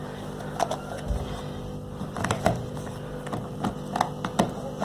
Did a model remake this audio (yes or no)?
no